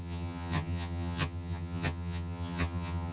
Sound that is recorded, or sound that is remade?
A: remade